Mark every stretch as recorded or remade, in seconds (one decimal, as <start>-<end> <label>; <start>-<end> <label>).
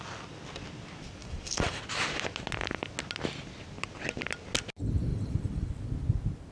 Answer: 0.0-1.2 recorded; 1.2-1.8 remade; 1.8-5.1 recorded; 5.1-5.7 remade; 5.7-6.5 recorded